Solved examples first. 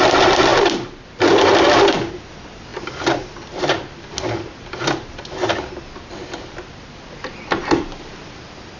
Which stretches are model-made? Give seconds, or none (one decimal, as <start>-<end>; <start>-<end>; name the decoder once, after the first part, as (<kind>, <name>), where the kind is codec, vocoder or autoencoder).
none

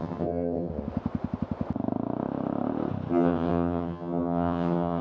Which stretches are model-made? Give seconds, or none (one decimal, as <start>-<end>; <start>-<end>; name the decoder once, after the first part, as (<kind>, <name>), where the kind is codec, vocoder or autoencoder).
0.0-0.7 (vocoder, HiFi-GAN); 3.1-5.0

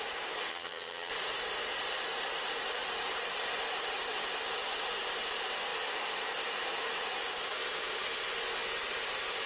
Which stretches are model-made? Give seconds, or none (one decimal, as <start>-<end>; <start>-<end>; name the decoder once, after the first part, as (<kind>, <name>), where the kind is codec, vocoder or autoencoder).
0.5-1.1 (vocoder, HiFi-GAN)

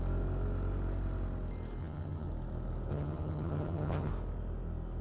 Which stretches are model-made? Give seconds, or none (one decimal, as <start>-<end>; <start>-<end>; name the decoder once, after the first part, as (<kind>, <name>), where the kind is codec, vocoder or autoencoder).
1.8-2.3 (vocoder, HiFi-GAN); 2.9-4.1

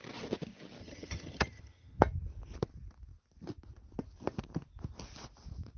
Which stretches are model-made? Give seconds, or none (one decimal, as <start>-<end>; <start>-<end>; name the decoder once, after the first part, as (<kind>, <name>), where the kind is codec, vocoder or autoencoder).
0.8-2.0 (vocoder, HiFi-GAN)

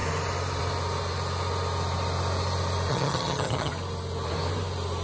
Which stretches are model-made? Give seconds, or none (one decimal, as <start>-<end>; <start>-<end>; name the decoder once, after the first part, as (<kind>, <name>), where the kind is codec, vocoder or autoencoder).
2.9-3.7 (vocoder, HiFi-GAN)